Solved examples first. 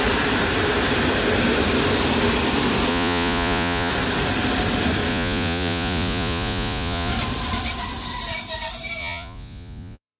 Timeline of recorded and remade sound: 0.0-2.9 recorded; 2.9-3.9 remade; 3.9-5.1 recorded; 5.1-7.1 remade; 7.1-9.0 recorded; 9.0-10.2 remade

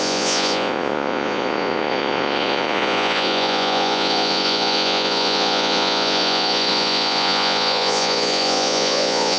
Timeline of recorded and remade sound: 0.0-9.4 remade

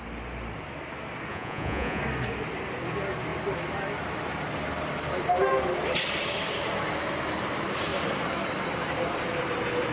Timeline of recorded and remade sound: 0.0-1.3 recorded; 1.3-2.0 remade; 2.0-9.9 recorded